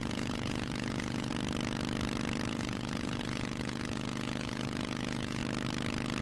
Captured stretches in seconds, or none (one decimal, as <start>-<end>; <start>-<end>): 1.3-2.5; 5.4-6.2